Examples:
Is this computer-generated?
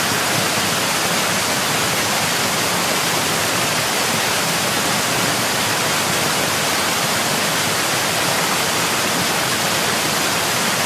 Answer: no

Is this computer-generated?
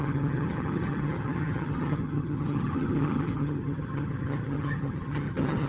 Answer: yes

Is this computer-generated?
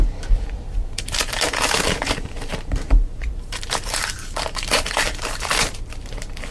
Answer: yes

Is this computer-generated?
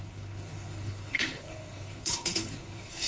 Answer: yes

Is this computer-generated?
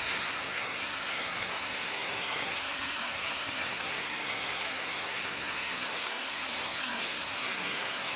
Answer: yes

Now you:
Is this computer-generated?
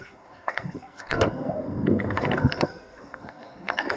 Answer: yes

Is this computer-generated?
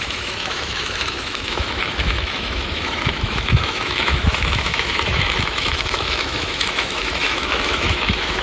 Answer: yes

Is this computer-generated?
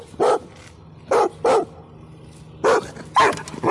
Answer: no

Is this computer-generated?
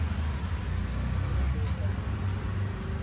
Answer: no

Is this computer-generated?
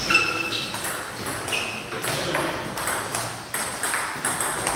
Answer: no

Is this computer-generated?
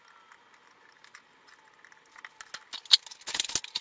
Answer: no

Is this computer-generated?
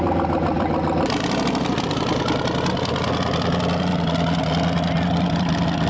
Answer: no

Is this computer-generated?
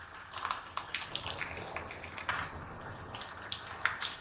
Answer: no